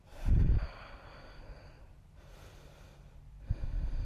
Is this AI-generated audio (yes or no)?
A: no